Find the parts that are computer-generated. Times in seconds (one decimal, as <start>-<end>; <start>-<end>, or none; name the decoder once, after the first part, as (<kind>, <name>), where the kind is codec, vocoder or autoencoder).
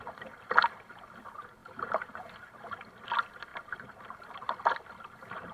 1.6-2.4 (vocoder, BigVGAN v2)